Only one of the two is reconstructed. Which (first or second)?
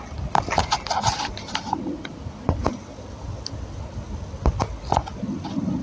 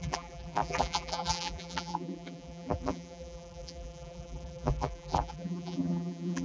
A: second